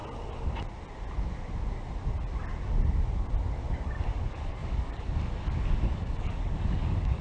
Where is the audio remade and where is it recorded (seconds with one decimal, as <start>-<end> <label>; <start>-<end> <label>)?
0.0-4.1 recorded; 4.1-7.2 remade